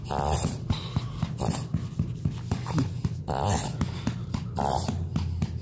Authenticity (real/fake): real